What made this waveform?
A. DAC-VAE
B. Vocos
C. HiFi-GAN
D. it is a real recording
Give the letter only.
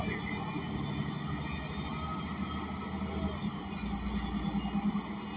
D